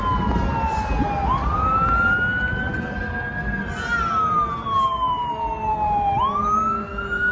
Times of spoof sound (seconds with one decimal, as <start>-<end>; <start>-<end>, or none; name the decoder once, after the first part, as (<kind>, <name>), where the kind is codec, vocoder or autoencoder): none